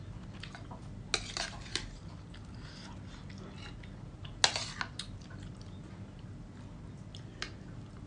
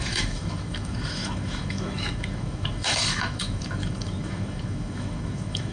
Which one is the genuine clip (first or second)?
first